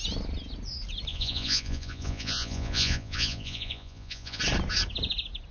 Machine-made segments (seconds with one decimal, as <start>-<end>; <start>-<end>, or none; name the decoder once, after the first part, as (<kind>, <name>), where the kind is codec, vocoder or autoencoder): 1.1-4.4 (vocoder, Vocos)

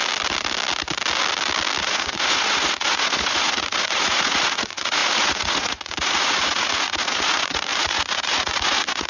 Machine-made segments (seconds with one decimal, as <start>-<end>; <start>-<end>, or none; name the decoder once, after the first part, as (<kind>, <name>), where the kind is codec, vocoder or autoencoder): 1.8-9.1 (vocoder, Vocos)

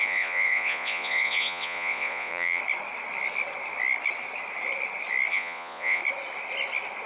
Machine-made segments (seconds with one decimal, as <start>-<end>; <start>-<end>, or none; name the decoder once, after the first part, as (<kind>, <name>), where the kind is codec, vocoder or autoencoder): 0.0-2.6 (vocoder, Vocos); 5.3-6.0

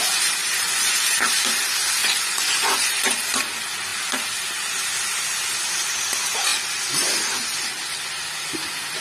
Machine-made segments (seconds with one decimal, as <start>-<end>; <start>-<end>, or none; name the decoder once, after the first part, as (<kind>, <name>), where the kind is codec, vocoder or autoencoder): 0.4-1.2 (vocoder, Vocos); 2.0-3.4